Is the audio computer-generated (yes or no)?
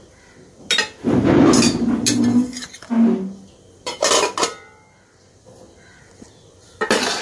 no